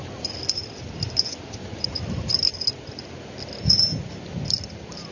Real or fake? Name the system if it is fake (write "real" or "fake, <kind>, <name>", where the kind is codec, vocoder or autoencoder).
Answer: real